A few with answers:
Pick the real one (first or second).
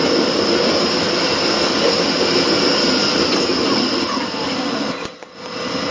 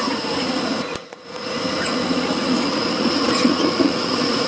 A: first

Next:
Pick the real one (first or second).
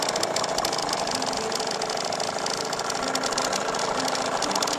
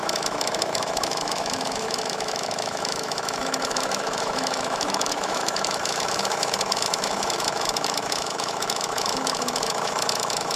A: first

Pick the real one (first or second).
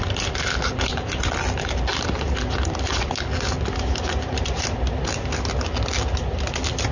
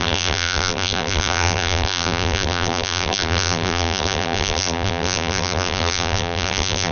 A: first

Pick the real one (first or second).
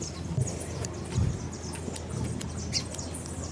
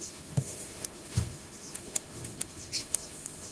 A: first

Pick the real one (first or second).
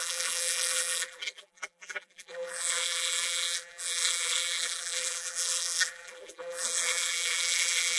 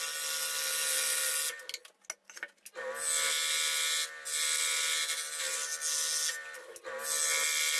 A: second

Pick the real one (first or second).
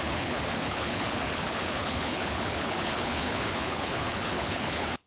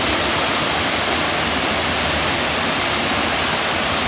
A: second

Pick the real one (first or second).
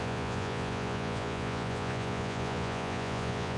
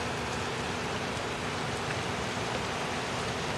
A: second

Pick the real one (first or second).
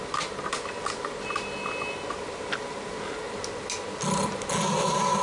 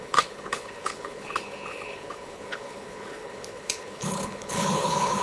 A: first